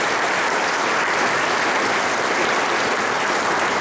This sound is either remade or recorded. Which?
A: recorded